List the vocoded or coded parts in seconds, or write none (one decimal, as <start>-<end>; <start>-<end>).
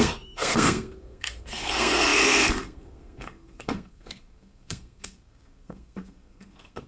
0.0-6.9